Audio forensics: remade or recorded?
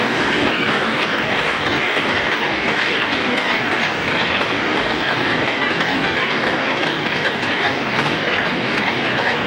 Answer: remade